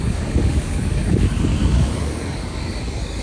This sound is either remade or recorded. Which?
remade